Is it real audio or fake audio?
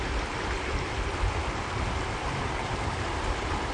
real